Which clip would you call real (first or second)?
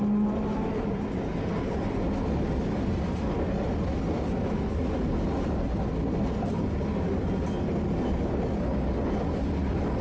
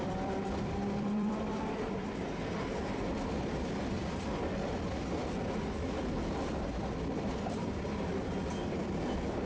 first